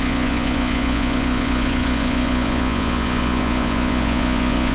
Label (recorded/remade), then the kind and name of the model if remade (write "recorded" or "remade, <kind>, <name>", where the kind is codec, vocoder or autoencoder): remade, vocoder, Vocos